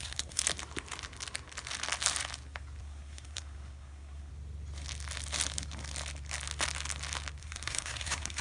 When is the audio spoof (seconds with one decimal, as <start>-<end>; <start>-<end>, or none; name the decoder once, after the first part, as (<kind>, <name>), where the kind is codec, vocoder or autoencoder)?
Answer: 0.0-0.4 (codec, SNAC); 2.8-4.3; 7.4-8.4